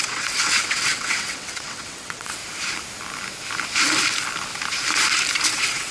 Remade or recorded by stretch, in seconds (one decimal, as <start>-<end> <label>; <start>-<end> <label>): 0.0-2.4 remade; 2.4-5.5 recorded; 5.5-5.9 remade